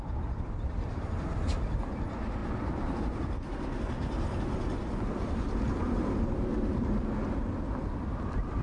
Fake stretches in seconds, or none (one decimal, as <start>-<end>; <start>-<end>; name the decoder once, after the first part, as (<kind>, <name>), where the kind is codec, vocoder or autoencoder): none